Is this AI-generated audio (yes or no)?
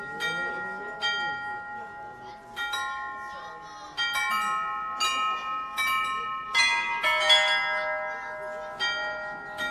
no